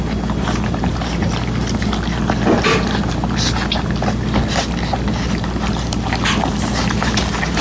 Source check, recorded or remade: recorded